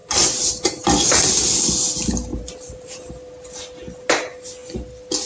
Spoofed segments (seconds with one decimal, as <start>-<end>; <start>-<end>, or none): 0.0-0.5; 2.3-3.2